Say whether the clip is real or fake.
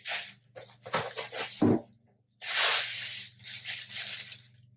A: real